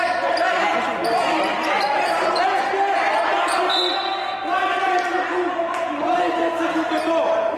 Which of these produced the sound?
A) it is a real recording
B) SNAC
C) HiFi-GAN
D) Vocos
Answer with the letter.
A